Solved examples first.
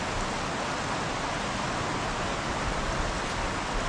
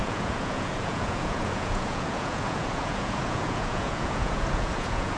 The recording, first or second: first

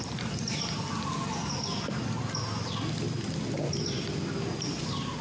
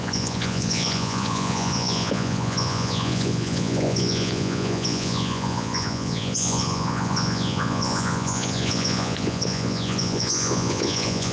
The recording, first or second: first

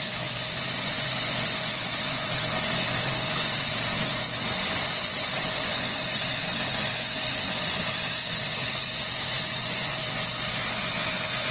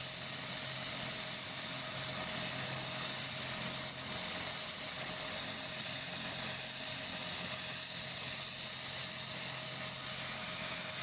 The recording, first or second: second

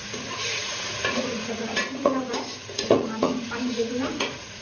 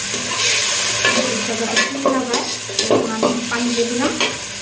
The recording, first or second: second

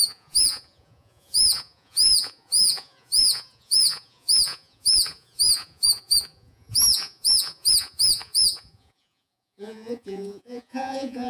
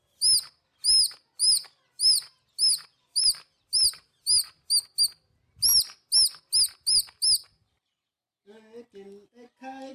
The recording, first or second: second